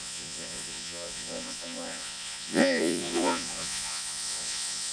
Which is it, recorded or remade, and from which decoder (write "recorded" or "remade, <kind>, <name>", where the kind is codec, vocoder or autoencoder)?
remade, vocoder, Vocos